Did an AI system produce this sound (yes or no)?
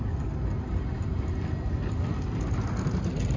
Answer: no